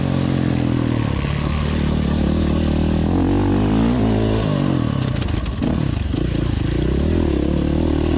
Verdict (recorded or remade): recorded